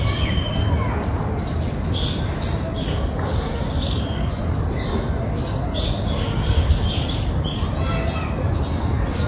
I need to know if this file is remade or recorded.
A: recorded